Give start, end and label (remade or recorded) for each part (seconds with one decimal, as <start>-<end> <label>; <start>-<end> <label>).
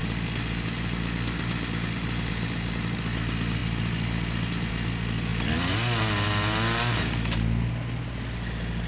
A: 0.0-8.9 recorded